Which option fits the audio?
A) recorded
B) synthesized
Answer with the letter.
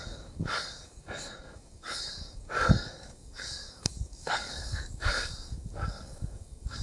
B